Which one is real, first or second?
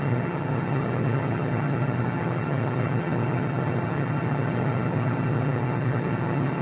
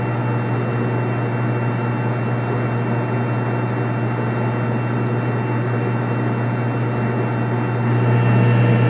second